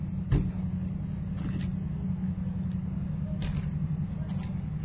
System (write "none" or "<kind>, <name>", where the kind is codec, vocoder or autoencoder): none